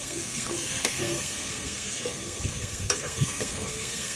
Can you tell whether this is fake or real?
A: fake